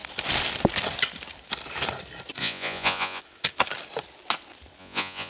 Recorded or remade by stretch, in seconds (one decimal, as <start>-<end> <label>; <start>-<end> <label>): 0.0-2.4 recorded; 2.4-3.2 remade; 3.2-4.8 recorded; 4.8-5.3 remade